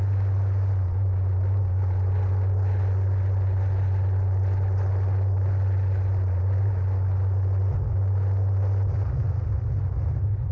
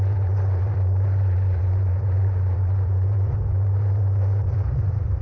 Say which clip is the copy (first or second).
second